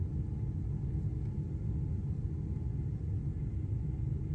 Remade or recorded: recorded